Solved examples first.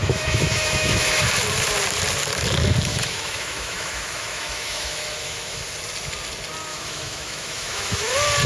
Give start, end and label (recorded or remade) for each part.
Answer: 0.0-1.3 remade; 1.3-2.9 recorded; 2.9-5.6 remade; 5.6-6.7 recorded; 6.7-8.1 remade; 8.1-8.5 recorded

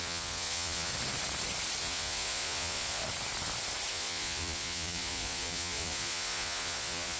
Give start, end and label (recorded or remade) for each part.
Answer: 0.0-0.9 remade; 0.9-1.8 recorded; 1.8-3.0 remade; 3.0-3.9 recorded; 3.9-7.2 remade

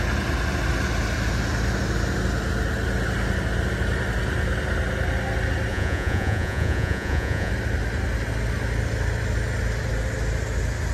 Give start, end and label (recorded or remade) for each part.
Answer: 0.0-5.7 recorded; 5.7-7.5 remade; 7.5-10.9 recorded

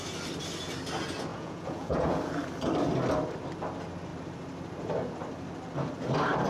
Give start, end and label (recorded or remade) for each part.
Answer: 0.0-1.3 recorded; 1.3-2.2 remade; 2.2-6.5 recorded

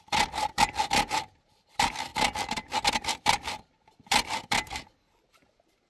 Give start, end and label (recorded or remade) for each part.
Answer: 0.0-5.9 recorded